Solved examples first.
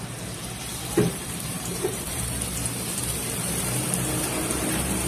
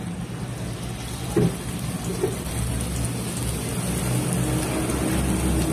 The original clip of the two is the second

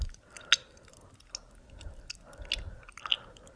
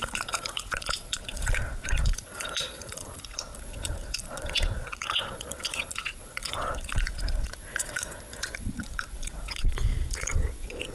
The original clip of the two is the first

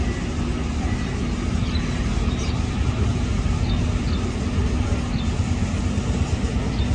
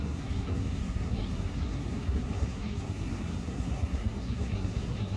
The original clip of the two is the first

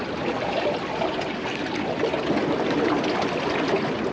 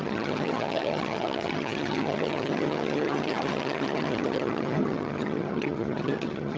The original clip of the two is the first